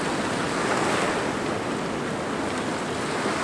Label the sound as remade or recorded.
recorded